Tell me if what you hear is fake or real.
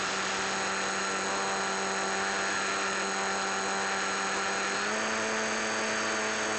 real